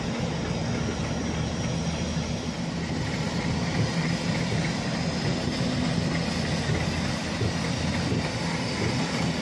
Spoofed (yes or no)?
no